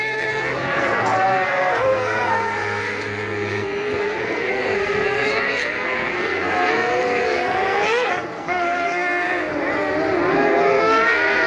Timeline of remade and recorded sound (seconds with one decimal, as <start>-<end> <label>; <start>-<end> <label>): 0.0-9.6 remade; 9.6-10.3 recorded; 10.3-11.5 remade